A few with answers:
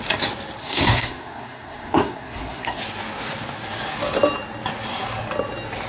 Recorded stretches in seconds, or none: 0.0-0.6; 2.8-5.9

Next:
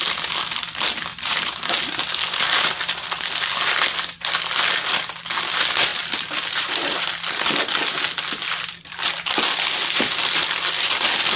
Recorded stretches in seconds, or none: 0.0-1.1; 1.7-5.9; 7.1-11.4

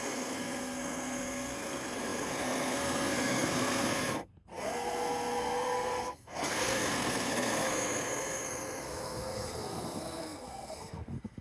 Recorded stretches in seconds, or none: none

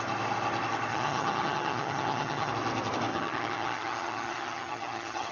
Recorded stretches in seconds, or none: 0.0-0.9; 2.5-3.1

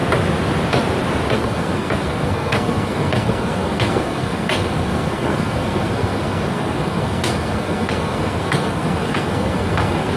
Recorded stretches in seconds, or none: 0.0-1.3

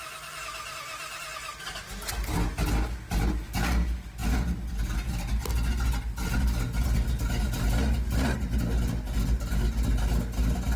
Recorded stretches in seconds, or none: 0.0-10.8

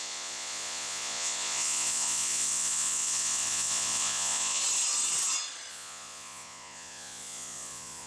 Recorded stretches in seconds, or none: 4.6-5.7

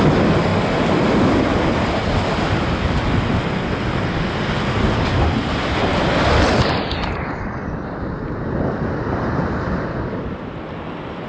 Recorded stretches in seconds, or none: 0.0-11.3